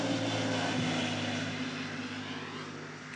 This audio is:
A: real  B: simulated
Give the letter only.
A